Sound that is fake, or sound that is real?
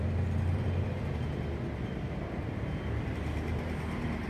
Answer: fake